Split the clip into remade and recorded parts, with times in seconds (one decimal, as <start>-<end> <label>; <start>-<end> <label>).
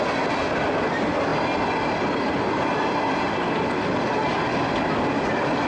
0.0-5.7 recorded